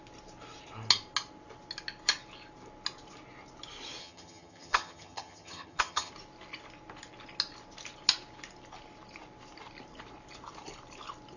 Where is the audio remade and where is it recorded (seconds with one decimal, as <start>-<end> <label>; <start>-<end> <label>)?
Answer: 0.0-4.0 recorded; 4.0-6.1 remade; 6.1-11.4 recorded